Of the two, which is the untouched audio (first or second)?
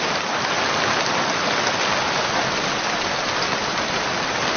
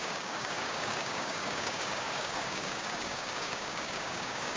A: first